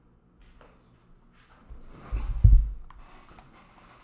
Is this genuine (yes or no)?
yes